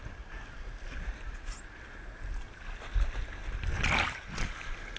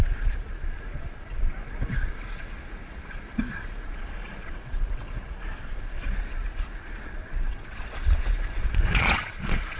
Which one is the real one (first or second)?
first